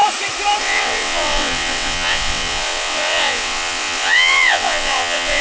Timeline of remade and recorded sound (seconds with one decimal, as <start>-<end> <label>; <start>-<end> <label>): 0.0-0.6 recorded; 0.6-5.4 remade